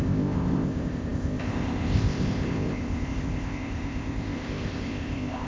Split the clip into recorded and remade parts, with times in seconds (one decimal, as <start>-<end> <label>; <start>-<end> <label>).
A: 0.0-5.5 remade